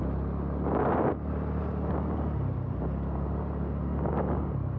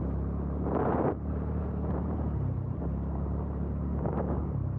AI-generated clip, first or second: second